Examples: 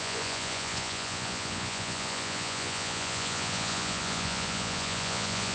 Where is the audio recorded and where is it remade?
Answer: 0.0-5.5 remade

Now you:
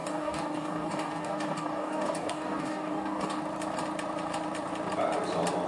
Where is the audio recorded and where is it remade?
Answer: 0.0-3.4 remade; 3.4-5.7 recorded

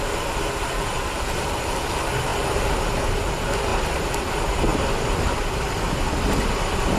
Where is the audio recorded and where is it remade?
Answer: 0.0-2.3 recorded; 2.3-3.0 remade; 3.0-3.7 recorded; 3.7-4.3 remade; 4.3-4.7 recorded; 4.7-6.5 remade; 6.5-7.0 recorded

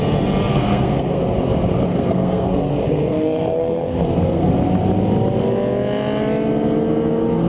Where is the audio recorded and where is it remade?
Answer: 0.0-0.5 recorded; 0.5-1.2 remade; 1.2-1.9 recorded; 1.9-4.5 remade; 4.5-7.5 recorded